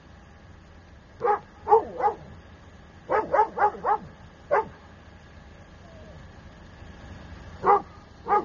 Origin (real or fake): real